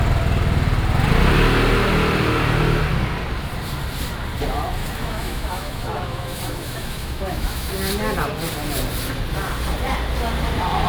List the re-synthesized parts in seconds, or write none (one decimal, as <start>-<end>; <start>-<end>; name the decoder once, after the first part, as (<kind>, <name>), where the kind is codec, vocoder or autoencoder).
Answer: 4.8-7.7 (autoencoder, DAC-VAE)